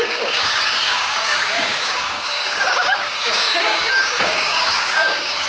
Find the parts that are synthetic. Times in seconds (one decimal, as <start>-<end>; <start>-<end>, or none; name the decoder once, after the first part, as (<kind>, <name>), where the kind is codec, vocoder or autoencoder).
0.0-5.5 (codec, DAC)